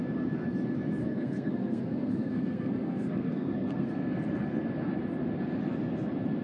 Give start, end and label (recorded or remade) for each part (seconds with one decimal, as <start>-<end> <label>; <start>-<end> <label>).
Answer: 0.0-1.0 recorded; 1.0-4.0 remade; 4.0-6.4 recorded